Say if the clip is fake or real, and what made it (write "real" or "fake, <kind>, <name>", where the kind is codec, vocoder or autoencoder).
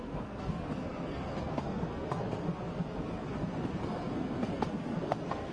fake, codec, SNAC